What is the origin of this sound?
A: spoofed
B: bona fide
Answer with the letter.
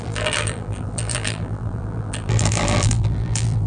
A